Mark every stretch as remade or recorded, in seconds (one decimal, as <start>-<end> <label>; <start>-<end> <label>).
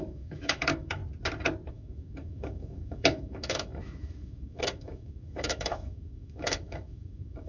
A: 0.0-1.0 remade; 1.0-1.7 recorded; 1.7-7.5 remade